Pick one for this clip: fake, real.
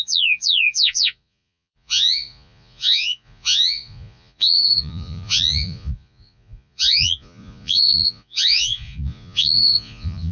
fake